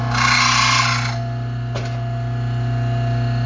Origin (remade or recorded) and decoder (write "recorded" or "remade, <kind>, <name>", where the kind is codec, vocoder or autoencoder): recorded